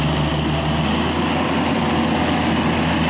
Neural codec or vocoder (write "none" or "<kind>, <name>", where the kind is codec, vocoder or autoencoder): none